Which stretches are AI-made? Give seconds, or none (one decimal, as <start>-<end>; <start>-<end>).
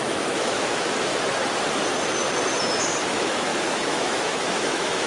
0.0-1.1; 3.1-5.1